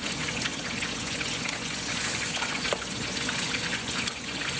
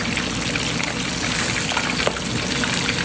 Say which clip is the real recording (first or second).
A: second